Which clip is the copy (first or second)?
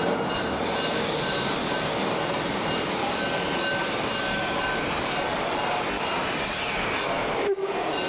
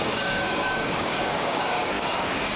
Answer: second